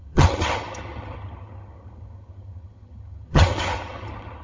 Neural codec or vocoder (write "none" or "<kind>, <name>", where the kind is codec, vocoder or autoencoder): vocoder, HiFi-GAN